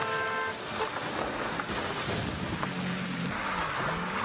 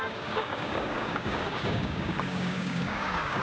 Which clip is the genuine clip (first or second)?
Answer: first